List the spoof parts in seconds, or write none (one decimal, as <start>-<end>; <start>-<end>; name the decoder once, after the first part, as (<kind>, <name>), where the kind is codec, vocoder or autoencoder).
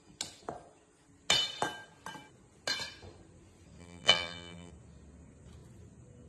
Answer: 3.8-4.7 (vocoder, BigVGAN v2)